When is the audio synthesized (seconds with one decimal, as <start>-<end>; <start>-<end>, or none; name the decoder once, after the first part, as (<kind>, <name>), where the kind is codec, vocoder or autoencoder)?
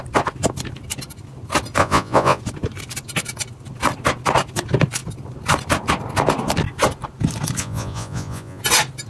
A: 1.8-2.4 (vocoder, Vocos); 7.6-8.6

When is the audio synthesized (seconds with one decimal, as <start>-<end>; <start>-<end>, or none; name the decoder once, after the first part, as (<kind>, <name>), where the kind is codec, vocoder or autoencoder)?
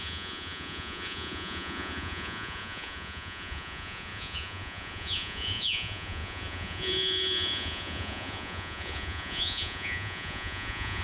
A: 0.0-11.0 (vocoder, Vocos)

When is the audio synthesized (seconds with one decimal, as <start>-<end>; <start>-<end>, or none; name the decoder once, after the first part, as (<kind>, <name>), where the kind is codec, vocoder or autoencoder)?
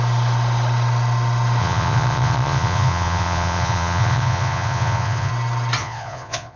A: 1.6-5.3 (vocoder, Vocos); 5.8-6.6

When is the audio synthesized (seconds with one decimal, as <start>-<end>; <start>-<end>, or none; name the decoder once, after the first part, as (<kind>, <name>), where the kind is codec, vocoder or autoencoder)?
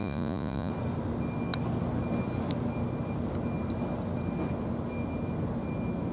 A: 0.0-0.7 (vocoder, Vocos)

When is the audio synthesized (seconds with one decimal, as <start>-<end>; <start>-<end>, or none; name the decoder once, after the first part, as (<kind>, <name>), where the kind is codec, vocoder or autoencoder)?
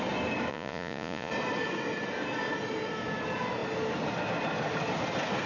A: 0.5-1.3 (vocoder, Vocos)